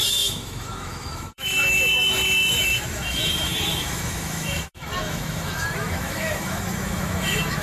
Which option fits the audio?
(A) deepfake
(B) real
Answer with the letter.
A